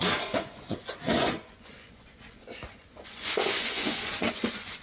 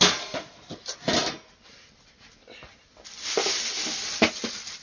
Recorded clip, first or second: second